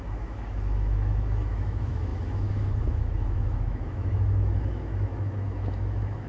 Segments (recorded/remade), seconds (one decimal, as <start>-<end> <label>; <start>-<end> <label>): 0.0-6.3 remade